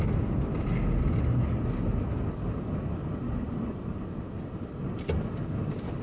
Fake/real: real